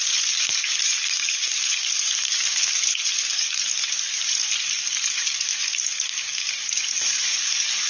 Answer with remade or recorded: remade